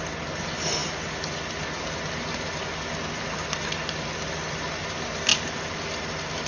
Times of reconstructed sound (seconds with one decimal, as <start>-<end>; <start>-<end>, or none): none